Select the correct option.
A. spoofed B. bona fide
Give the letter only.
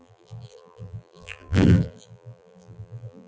A